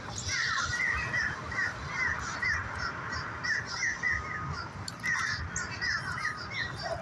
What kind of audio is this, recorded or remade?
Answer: recorded